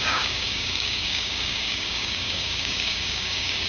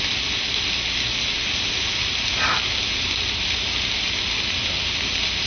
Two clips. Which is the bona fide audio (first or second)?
second